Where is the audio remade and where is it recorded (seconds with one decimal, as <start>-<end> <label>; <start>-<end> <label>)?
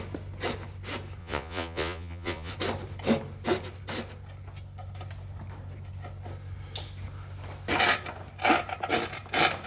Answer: 0.0-1.2 recorded; 1.2-2.5 remade; 2.5-9.7 recorded